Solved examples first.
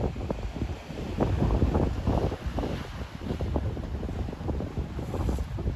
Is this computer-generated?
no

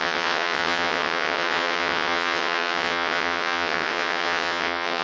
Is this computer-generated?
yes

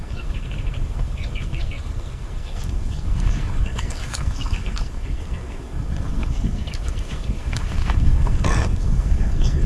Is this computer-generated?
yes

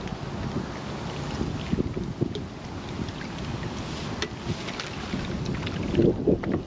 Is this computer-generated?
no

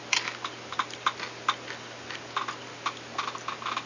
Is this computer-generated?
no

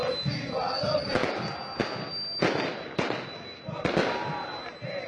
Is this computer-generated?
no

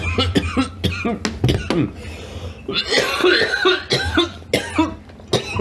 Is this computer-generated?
no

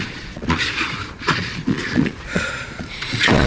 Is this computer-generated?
yes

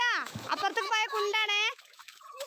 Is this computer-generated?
yes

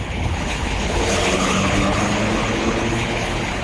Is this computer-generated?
yes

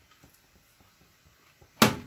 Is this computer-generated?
no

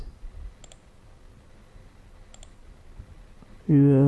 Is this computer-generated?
no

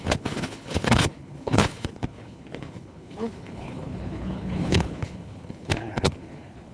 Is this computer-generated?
yes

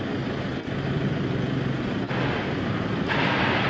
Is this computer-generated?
no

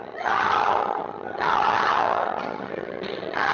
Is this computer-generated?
yes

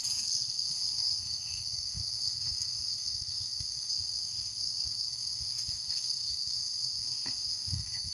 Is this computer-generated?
yes